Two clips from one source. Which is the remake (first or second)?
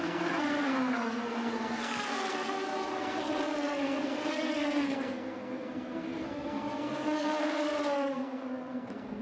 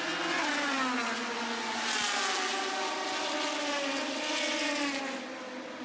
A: first